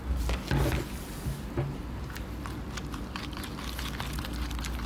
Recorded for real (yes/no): yes